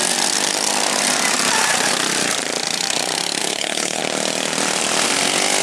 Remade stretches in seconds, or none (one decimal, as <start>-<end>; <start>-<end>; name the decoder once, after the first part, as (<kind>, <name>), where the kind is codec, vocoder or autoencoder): 3.4-4.0 (codec, HILCodec)